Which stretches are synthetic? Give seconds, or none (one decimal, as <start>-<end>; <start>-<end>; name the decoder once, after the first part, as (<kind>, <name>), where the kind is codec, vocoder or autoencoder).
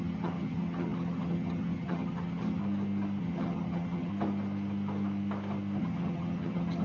0.0-2.6 (vocoder, HiFi-GAN); 3.2-4.1; 5.8-6.8